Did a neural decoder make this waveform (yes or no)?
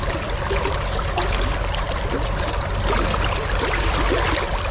no